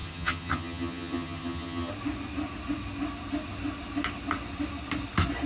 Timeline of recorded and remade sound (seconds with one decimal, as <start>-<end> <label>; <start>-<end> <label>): 0.0-1.9 remade; 1.9-5.5 recorded